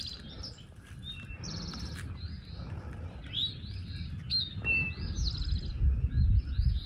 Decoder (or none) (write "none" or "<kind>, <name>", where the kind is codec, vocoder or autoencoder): none